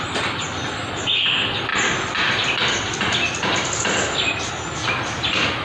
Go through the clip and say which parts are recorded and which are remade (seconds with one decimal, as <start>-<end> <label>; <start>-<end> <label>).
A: 0.0-5.6 recorded